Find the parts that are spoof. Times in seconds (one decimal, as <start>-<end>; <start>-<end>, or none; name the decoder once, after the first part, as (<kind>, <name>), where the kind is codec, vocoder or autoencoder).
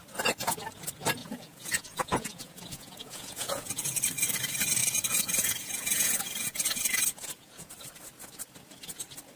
1.2-4.0 (vocoder, Vocos); 4.8-7.7